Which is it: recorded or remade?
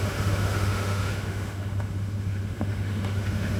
remade